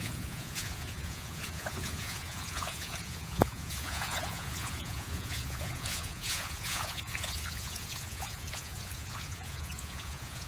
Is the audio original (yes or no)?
no